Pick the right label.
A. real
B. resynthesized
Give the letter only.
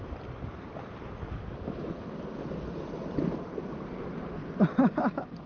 A